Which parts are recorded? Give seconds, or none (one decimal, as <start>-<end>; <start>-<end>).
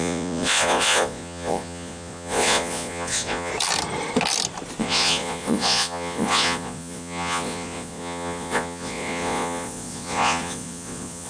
3.5-4.8